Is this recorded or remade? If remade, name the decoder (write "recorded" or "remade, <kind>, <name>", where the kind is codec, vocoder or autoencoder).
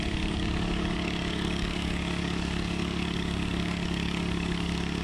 remade, codec, DAC